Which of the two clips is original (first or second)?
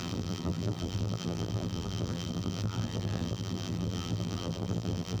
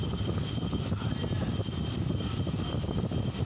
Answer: second